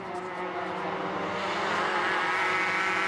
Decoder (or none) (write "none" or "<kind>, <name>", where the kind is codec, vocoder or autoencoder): none